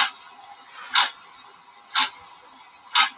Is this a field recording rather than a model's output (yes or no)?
yes